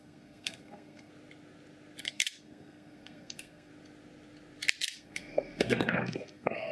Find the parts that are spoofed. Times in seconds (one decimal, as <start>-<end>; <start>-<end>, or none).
0.0-1.1; 2.0-3.7; 4.9-6.7